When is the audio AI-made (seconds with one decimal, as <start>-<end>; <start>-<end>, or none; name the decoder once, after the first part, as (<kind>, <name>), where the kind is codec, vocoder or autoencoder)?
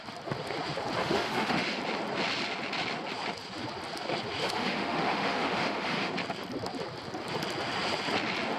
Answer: 1.0-1.8 (autoencoder, DAC-VAE); 4.4-6.1